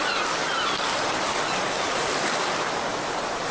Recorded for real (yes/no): no